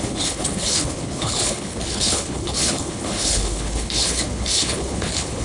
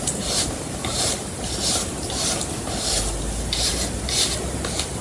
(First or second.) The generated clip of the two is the first